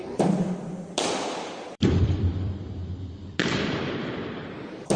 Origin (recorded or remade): remade